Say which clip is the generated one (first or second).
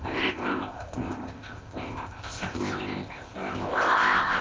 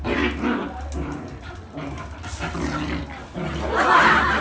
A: first